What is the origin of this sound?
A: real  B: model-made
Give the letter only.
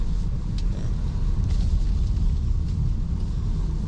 A